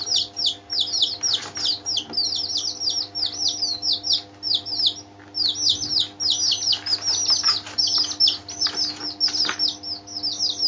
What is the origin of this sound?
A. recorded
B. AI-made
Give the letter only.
A